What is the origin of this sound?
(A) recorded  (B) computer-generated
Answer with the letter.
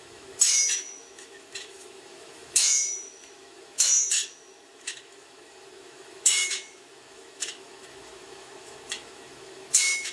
B